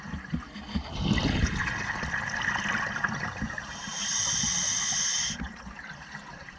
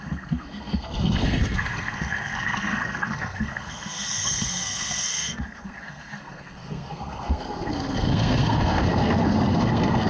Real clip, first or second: first